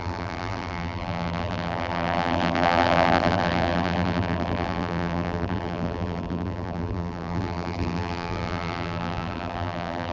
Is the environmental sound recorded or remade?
remade